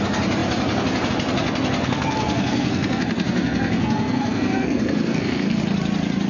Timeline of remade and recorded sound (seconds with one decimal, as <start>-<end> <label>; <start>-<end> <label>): 0.0-1.8 recorded; 1.8-5.6 remade; 5.6-6.3 recorded